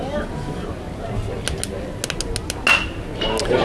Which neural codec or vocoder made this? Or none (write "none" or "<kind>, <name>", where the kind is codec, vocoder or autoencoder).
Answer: none